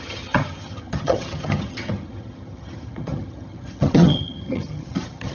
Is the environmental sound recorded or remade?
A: remade